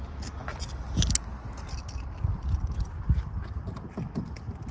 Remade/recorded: recorded